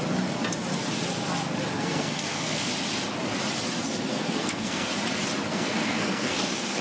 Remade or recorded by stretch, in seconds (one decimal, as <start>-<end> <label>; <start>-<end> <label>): 0.0-1.8 recorded; 1.8-2.7 remade; 2.7-4.1 recorded; 4.1-4.9 remade; 4.9-5.5 recorded; 5.5-6.8 remade